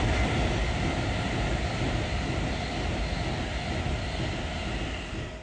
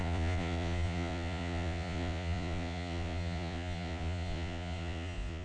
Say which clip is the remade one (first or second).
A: second